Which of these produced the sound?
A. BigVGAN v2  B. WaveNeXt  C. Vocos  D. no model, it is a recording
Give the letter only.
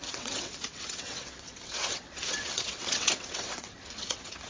B